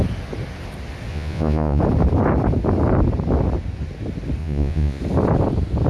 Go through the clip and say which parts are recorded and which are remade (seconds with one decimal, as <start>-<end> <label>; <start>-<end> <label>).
0.0-1.1 recorded; 1.1-1.8 remade; 1.8-4.4 recorded; 4.4-5.0 remade; 5.0-5.9 recorded